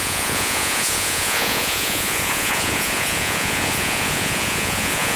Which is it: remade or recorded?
remade